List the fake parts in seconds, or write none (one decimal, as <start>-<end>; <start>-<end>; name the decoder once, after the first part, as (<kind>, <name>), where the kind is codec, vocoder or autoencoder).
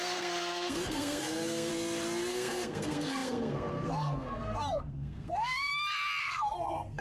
0.0-1.7 (codec, SNAC); 2.3-5.7; 6.2-7.0